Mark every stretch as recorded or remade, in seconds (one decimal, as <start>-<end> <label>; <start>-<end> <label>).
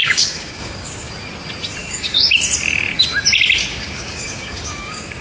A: 0.0-1.1 remade; 1.1-1.8 recorded; 1.8-2.4 remade; 2.4-3.7 recorded; 3.7-5.2 remade